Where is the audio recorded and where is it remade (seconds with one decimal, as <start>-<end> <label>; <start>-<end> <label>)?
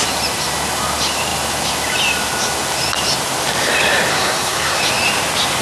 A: 0.0-4.1 recorded; 4.1-4.8 remade; 4.8-5.6 recorded